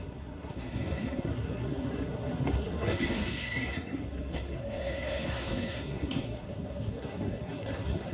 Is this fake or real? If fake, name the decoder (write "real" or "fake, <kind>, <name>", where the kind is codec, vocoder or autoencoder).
fake, codec, SNAC